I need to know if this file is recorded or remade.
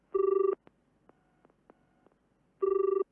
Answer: recorded